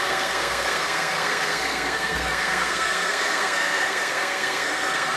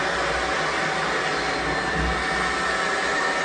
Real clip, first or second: second